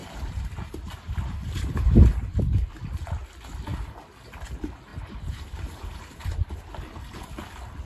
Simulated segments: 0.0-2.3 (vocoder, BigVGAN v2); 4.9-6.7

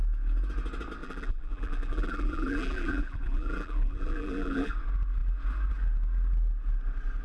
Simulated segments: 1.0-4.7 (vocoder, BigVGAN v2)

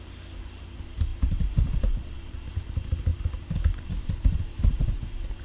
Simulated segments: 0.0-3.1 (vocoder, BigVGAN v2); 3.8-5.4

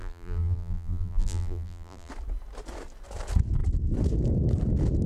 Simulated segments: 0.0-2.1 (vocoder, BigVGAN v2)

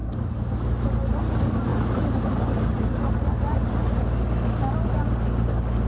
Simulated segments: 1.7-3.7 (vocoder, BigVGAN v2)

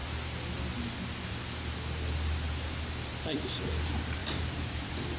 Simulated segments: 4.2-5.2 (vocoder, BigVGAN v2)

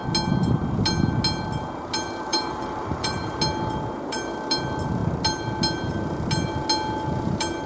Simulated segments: 2.3-3.4 (vocoder, BigVGAN v2)

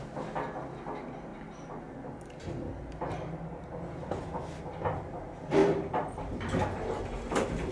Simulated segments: 5.6-6.2 (vocoder, BigVGAN v2)